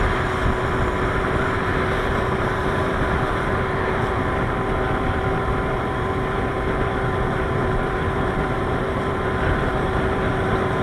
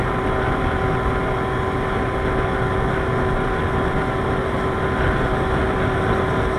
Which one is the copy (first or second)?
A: first